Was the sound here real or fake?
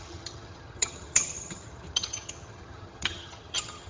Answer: fake